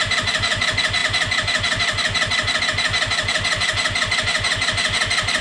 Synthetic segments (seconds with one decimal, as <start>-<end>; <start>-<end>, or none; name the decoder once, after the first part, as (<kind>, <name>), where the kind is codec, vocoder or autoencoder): none